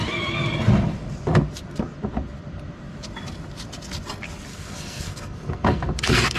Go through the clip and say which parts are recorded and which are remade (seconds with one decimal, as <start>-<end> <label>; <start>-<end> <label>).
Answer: 0.0-4.5 recorded; 4.5-6.4 remade